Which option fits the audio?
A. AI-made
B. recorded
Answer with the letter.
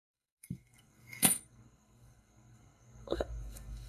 A